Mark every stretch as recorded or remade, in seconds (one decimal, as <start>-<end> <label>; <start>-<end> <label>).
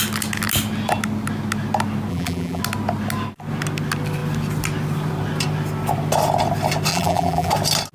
0.0-2.1 recorded; 2.1-2.6 remade; 2.6-6.9 recorded; 6.9-7.5 remade; 7.5-7.9 recorded